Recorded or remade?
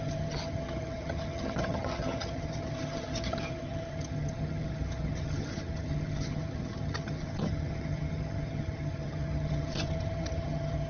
remade